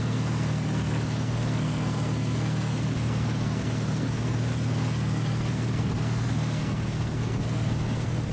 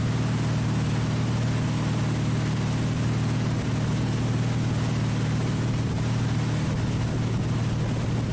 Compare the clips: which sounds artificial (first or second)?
first